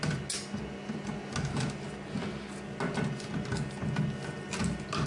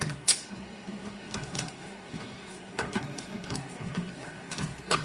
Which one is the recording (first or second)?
first